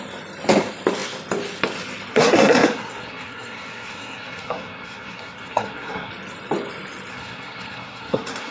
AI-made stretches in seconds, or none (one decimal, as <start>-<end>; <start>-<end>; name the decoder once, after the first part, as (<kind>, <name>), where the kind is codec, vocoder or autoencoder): 2.1-6.1 (codec, SNAC); 7.1-8.5